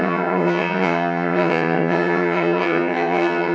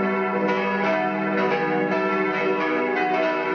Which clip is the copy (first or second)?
first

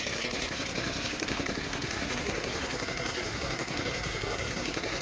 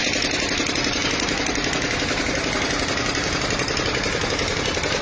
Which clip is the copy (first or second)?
first